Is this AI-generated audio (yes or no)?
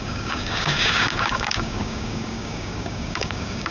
yes